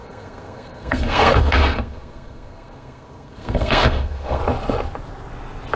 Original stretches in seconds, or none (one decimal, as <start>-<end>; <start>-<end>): 4.4-5.8